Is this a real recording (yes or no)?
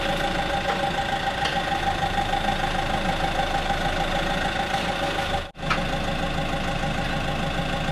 yes